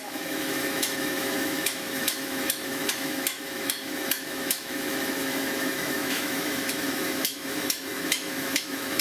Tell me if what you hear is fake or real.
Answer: fake